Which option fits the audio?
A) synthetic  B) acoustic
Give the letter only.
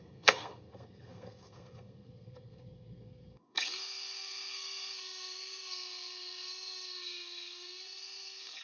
A